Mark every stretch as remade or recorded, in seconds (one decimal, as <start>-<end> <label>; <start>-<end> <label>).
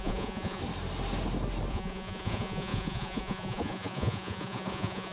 0.0-0.6 remade; 0.6-1.7 recorded; 1.7-5.1 remade